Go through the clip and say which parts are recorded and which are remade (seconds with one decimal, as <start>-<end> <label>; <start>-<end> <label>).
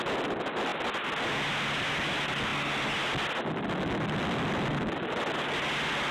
0.0-4.2 recorded; 4.2-4.8 remade; 4.8-6.1 recorded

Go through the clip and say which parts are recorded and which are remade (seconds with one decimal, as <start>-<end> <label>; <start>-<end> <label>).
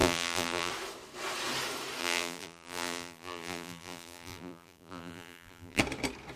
0.0-0.7 remade; 0.7-2.0 recorded; 2.0-5.8 remade; 5.8-6.4 recorded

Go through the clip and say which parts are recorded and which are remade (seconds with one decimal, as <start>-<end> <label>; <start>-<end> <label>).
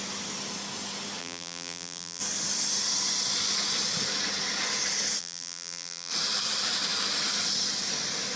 0.0-1.2 recorded; 1.2-2.2 remade; 2.2-5.2 recorded; 5.2-6.1 remade; 6.1-8.4 recorded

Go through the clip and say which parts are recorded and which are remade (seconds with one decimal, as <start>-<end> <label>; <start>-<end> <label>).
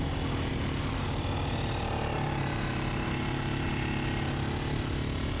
0.0-0.5 recorded; 0.5-3.7 remade; 3.7-5.4 recorded